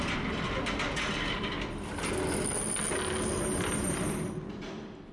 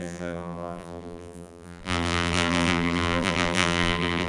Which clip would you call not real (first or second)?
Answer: second